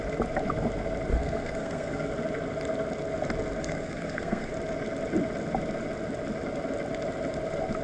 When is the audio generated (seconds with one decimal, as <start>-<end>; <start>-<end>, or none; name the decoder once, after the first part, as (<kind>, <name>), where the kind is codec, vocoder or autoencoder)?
1.1-2.1 (codec, SNAC); 3.6-4.5

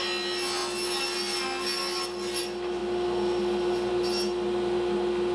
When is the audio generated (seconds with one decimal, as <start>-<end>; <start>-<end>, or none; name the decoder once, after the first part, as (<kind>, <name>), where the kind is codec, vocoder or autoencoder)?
none

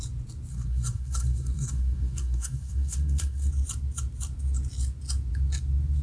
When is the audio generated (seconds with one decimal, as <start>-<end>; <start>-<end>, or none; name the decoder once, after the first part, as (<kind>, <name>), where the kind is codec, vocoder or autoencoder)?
0.5-3.5 (codec, SNAC)

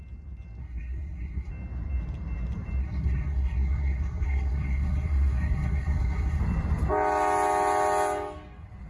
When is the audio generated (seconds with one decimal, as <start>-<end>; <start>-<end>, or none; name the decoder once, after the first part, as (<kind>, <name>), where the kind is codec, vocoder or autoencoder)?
0.6-1.5 (codec, SNAC); 2.8-6.4

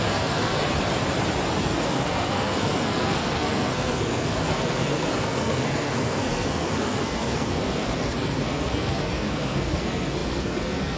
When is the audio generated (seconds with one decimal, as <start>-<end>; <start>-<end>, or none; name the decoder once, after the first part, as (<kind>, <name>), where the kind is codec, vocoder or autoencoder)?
0.0-0.6 (codec, SNAC); 1.6-11.0